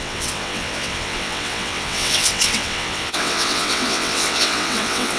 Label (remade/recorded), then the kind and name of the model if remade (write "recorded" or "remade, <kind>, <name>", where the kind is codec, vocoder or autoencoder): remade, vocoder, WaveNeXt